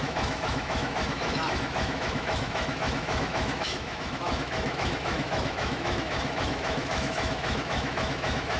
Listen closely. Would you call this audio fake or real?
fake